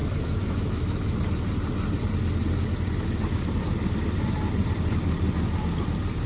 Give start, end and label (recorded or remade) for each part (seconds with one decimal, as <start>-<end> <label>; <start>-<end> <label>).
0.0-1.2 remade; 1.2-6.3 recorded